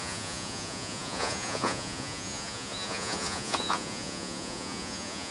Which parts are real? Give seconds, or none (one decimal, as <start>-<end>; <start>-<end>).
none